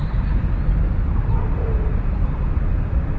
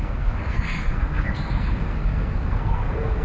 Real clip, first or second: first